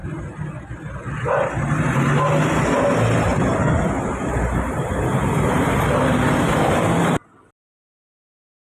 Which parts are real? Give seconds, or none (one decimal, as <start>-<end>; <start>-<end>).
0.0-3.3; 4.9-8.7